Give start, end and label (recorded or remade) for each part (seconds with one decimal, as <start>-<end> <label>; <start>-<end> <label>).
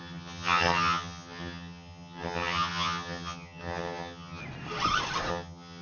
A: 0.0-4.4 remade; 4.4-5.3 recorded; 5.3-5.8 remade